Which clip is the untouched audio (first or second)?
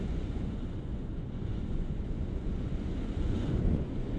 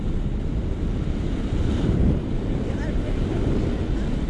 second